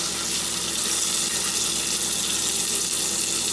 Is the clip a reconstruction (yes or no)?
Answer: no